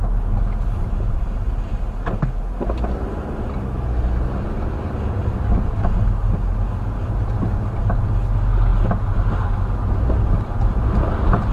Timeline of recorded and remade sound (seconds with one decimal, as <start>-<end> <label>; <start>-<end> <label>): 0.0-11.5 recorded